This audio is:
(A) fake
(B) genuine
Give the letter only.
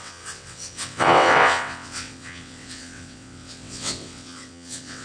A